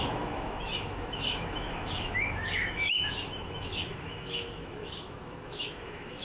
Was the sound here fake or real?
fake